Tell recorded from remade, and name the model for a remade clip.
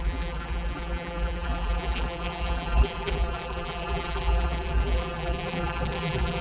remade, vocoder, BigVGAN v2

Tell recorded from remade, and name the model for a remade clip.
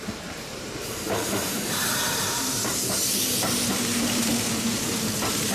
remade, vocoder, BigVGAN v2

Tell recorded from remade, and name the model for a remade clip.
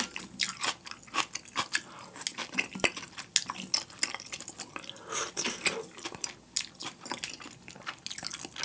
recorded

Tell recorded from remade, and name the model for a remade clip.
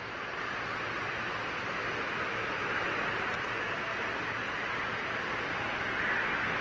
recorded